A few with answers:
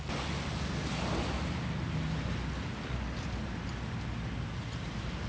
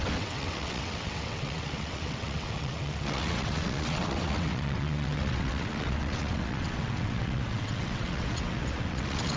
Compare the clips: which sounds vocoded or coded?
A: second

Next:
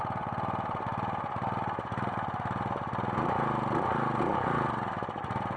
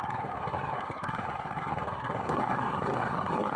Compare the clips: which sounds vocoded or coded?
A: second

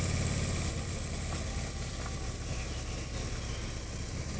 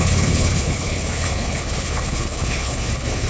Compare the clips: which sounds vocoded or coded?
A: second